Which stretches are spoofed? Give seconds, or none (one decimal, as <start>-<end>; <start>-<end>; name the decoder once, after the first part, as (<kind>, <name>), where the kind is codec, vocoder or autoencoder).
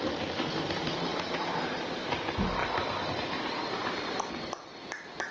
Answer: 2.6-4.3 (vocoder, BigVGAN v2)